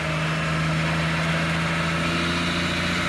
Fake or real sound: real